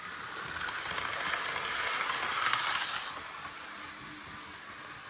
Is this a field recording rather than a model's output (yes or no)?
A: yes